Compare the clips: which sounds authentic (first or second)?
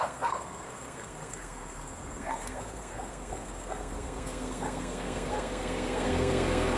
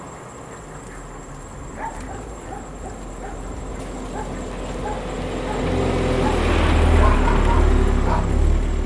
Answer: second